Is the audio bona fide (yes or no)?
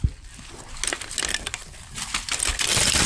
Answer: yes